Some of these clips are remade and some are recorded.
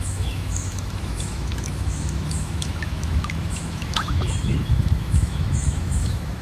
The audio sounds remade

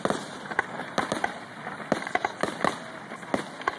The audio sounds remade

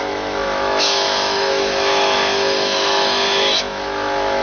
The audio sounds remade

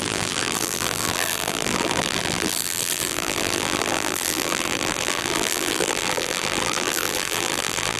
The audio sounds remade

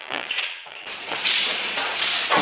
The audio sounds remade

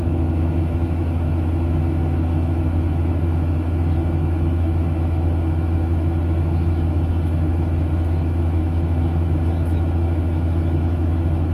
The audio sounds remade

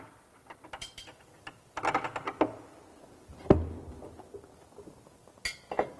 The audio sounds recorded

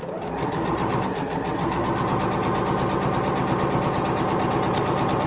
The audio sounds recorded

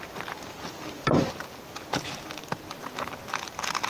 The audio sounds recorded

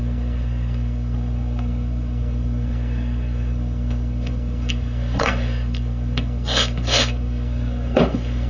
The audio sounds remade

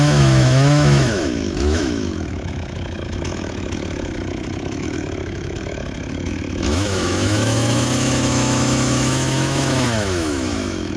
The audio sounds remade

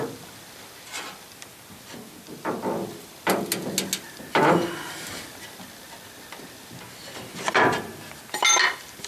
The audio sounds recorded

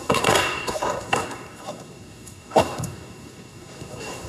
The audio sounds remade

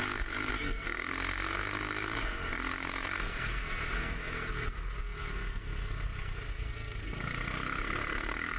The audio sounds remade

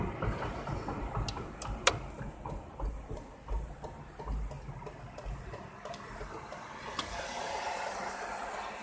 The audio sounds recorded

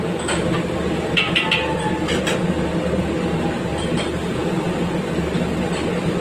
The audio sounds recorded